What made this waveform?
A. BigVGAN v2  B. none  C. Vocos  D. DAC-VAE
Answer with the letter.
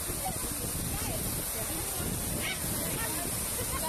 B